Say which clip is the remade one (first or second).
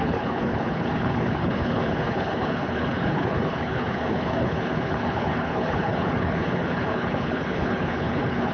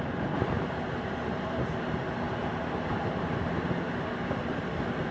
first